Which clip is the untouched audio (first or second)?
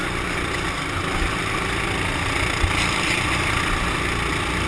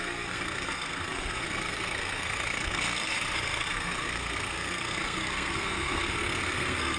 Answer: first